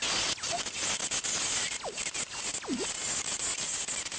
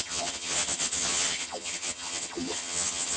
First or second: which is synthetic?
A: second